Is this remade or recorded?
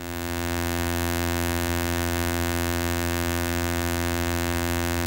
remade